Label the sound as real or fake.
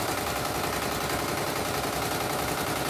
real